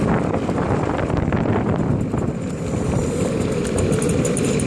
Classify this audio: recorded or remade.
remade